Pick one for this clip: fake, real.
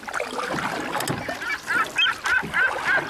real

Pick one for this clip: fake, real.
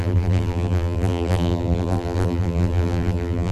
fake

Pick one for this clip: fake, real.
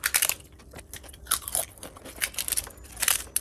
real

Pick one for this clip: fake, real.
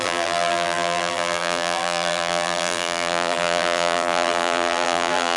fake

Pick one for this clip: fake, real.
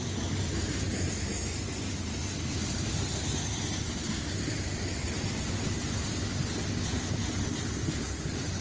real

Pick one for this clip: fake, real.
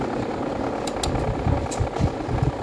real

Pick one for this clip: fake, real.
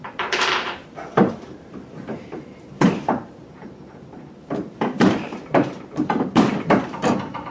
fake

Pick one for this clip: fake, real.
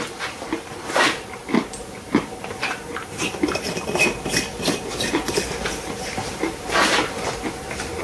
real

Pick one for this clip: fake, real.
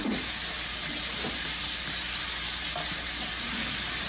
real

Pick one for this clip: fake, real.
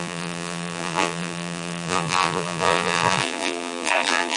fake